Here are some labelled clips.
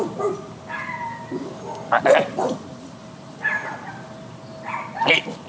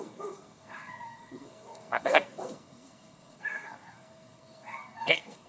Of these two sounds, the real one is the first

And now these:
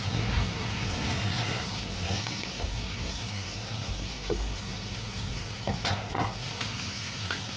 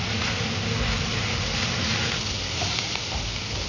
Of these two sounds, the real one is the second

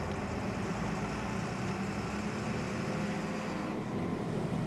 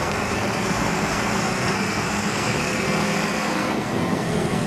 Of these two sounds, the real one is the first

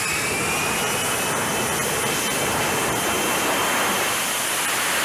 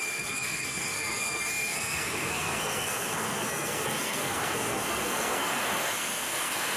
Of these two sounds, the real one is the first